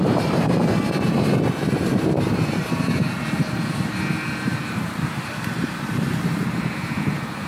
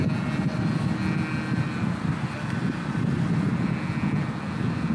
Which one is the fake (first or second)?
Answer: first